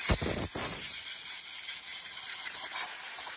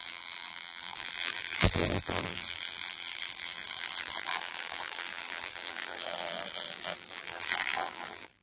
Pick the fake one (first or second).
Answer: second